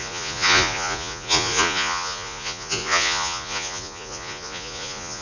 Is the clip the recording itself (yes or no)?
no